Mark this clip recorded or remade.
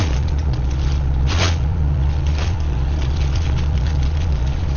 remade